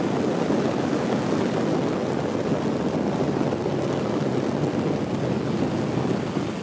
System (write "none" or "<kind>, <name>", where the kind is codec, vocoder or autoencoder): none